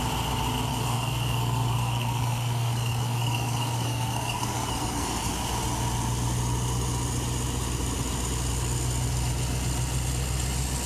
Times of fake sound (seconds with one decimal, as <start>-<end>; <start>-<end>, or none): 0.7-5.3